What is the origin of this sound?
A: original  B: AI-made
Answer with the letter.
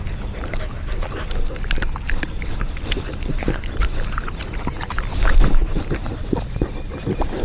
A